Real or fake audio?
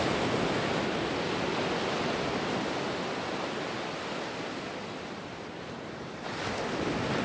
real